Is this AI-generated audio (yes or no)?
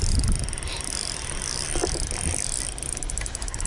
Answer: no